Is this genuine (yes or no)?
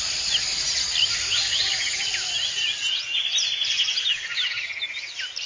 yes